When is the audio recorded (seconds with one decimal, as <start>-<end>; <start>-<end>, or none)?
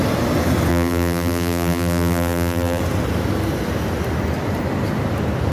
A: 0.0-0.7; 2.8-5.5